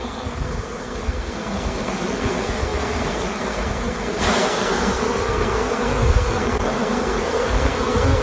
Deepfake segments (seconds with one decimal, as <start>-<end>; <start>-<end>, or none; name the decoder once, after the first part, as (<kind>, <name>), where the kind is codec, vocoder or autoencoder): 0.0-8.2 (codec, SNAC)